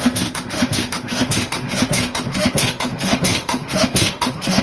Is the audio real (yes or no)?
no